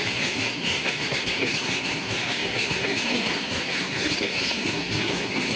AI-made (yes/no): yes